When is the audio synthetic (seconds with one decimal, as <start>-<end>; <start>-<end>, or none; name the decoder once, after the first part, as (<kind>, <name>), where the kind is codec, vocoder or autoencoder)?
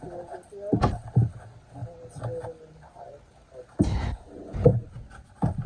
none